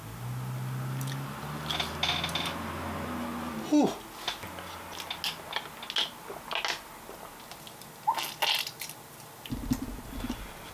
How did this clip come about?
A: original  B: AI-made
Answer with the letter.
A